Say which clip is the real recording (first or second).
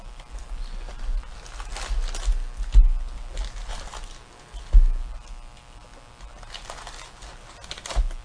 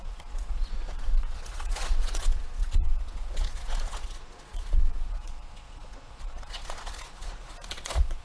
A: first